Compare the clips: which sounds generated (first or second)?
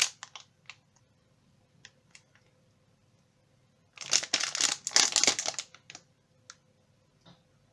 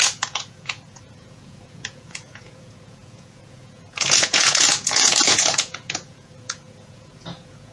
second